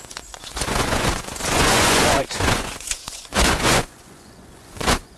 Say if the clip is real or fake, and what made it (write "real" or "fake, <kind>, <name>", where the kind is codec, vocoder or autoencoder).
fake, vocoder, Vocos